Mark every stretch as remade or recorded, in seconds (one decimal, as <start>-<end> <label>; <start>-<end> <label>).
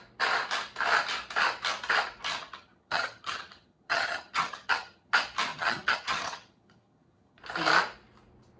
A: 0.0-2.4 recorded; 2.4-5.1 remade; 5.1-5.5 recorded; 5.5-7.4 remade; 7.4-8.6 recorded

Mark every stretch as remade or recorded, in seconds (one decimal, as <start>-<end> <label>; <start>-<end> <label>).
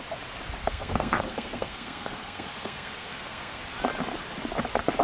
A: 0.0-0.6 recorded; 0.6-3.6 remade; 3.6-5.0 recorded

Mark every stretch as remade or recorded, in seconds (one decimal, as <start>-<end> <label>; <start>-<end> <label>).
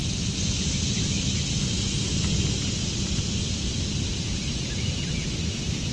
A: 0.0-5.9 recorded